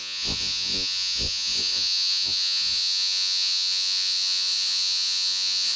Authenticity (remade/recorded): remade